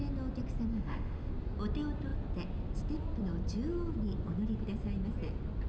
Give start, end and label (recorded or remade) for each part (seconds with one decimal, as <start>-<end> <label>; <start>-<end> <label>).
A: 0.0-0.7 recorded; 0.7-1.3 remade; 1.3-5.7 recorded

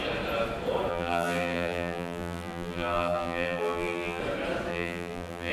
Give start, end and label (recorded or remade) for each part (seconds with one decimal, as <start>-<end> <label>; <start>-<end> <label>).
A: 0.0-0.9 recorded; 0.9-4.2 remade; 4.2-4.7 recorded; 4.7-5.5 remade

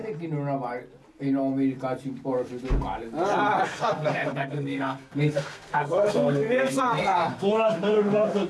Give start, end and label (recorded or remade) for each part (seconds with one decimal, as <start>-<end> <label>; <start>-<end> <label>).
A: 0.0-3.6 recorded; 3.6-8.5 remade

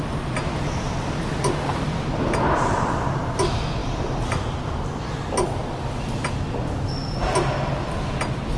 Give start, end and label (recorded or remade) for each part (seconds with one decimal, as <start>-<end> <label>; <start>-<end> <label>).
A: 0.0-3.8 recorded; 3.8-4.4 remade; 4.4-8.6 recorded